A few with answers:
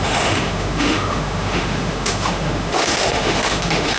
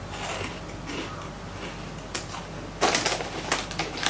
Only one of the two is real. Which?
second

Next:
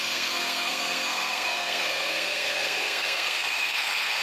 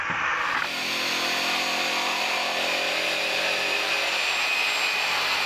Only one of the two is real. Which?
second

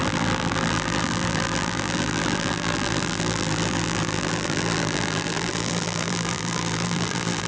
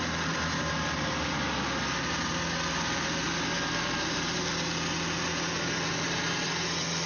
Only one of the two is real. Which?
second